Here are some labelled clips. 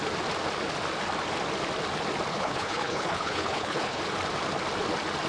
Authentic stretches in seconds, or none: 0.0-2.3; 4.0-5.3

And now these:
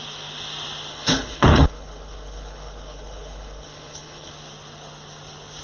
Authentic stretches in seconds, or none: 0.0-0.9; 4.3-5.6

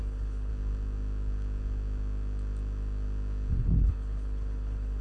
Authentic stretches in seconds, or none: 0.5-3.5

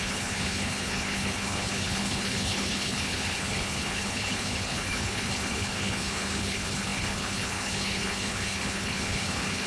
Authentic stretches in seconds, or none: none

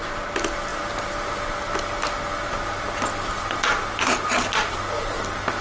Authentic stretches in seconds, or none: 0.0-5.6